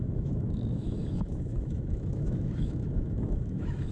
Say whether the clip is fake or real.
fake